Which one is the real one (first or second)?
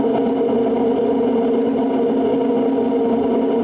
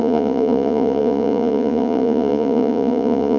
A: first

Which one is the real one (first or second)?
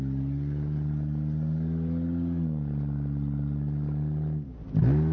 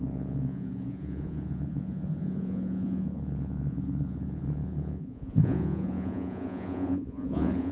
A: first